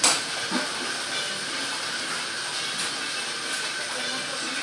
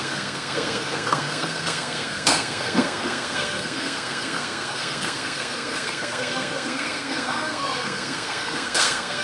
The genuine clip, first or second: first